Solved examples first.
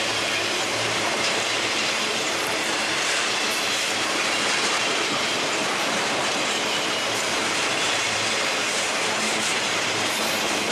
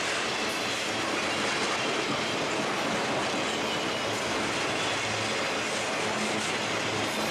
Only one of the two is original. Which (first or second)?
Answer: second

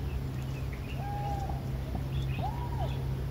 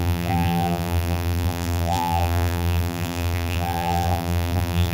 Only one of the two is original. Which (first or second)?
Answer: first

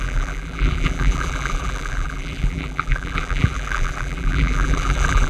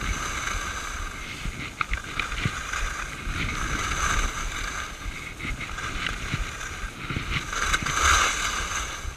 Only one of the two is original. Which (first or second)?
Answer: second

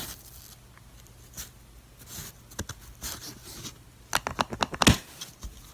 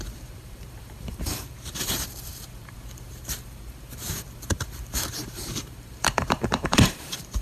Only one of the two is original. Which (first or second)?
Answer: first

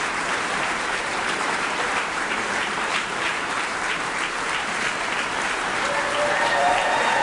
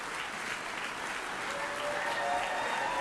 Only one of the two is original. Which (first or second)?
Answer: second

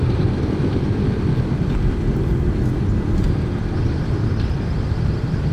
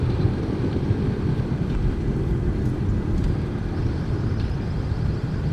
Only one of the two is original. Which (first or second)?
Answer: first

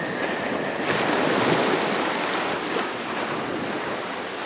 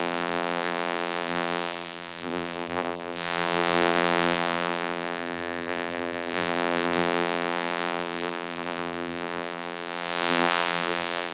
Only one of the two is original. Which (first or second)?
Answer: first